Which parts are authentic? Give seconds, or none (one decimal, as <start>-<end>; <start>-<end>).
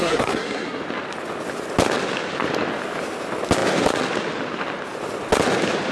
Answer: 0.8-5.9